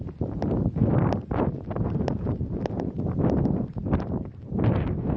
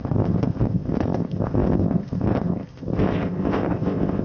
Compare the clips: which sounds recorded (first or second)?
first